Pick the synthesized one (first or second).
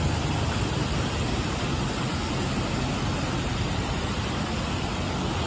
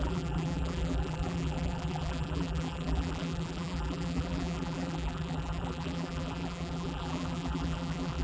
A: second